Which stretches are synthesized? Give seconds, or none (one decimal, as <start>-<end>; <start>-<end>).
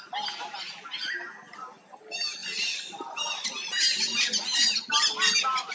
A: 2.4-3.7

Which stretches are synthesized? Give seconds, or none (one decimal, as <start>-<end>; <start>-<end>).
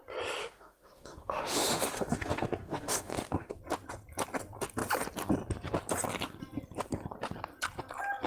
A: 0.4-3.6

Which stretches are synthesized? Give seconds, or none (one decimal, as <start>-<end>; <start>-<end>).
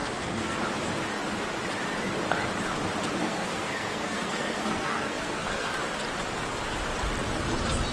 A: 0.0-0.6; 3.2-5.7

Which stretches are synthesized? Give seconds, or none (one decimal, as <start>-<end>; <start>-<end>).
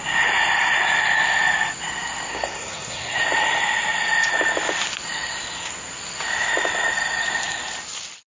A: 2.3-3.2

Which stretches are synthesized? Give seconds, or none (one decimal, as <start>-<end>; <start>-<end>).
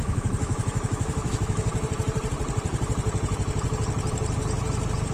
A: 0.0-1.7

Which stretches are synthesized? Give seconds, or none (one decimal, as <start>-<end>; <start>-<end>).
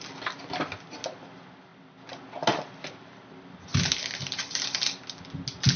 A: none